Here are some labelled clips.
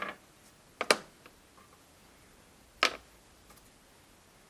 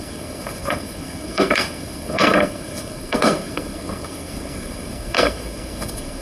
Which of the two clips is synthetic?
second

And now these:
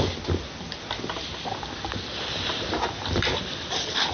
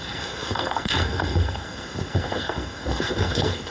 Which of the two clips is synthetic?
second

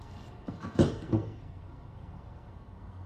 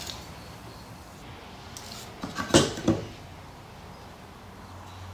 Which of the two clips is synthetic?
first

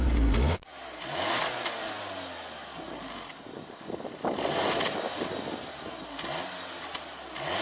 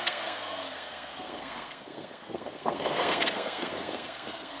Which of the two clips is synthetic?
second